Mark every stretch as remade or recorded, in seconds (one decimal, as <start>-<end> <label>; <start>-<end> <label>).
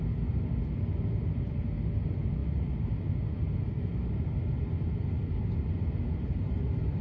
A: 0.0-7.0 recorded